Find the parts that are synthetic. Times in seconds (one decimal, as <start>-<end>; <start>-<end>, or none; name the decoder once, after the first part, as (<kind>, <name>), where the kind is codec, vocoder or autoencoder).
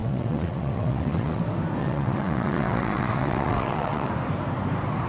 0.0-1.4 (vocoder, WaveNeXt); 1.8-4.1